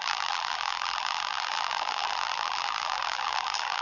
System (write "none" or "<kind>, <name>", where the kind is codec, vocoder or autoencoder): vocoder, BigVGAN v2